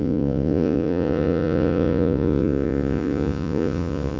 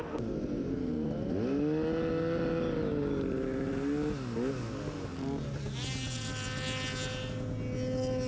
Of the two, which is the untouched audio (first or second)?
second